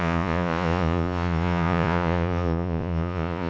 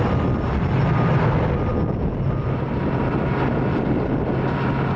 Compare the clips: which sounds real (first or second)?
second